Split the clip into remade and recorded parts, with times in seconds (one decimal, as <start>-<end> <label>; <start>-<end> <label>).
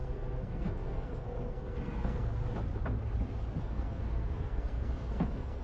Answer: 0.0-2.4 remade; 2.4-3.6 recorded; 3.6-5.6 remade